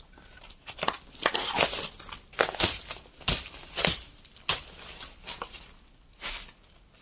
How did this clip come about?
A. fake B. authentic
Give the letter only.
B